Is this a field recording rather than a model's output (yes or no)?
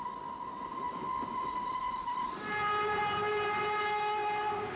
yes